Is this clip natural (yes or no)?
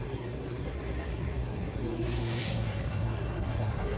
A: no